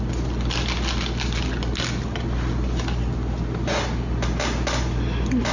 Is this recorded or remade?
recorded